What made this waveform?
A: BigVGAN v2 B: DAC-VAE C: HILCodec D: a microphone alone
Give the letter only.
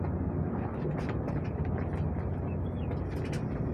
D